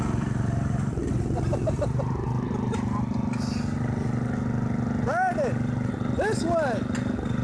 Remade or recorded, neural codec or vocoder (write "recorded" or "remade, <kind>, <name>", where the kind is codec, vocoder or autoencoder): recorded